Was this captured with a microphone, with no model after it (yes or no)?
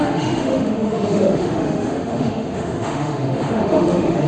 no